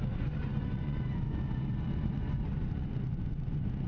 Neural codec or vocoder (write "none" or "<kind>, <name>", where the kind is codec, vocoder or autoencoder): vocoder, Vocos